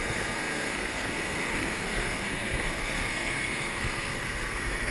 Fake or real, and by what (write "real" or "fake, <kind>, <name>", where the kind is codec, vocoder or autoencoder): fake, codec, SNAC